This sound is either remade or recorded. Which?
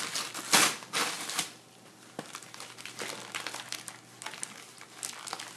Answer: recorded